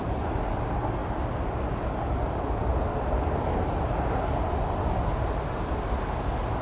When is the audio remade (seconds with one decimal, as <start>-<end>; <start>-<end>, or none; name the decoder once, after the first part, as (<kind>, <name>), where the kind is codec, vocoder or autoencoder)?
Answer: none